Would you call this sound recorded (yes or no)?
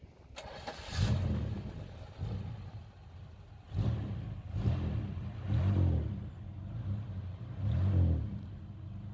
yes